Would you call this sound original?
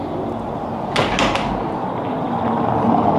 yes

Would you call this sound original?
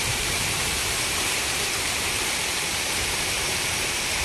no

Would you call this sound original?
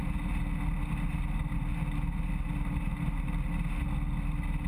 yes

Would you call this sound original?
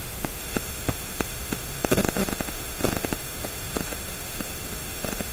no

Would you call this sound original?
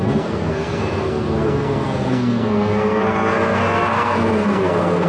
no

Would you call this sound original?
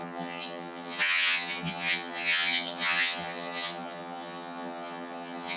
no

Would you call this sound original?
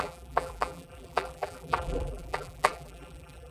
no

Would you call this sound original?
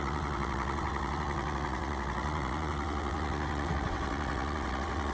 no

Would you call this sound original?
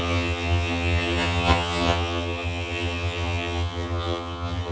no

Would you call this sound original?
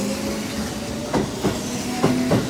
yes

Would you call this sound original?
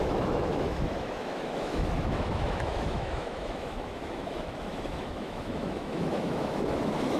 no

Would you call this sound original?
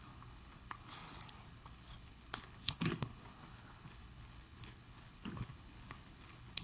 no